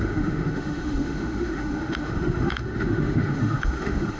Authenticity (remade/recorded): remade